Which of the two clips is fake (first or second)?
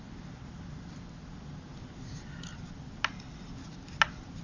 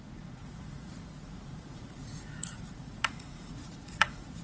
second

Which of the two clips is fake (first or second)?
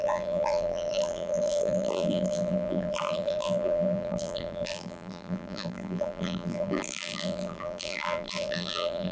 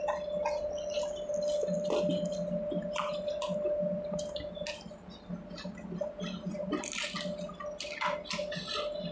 first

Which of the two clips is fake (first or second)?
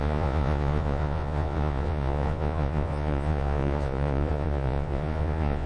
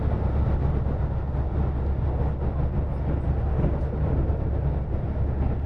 first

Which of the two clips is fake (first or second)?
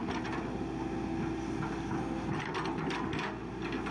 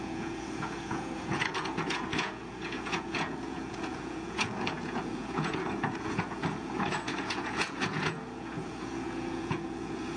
second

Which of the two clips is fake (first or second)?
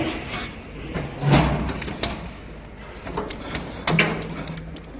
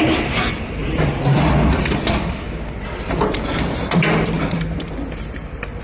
second